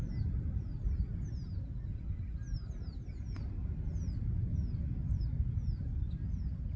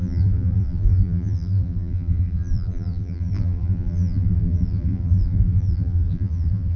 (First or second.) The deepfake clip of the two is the second